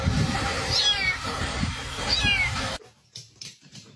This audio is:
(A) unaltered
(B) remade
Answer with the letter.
B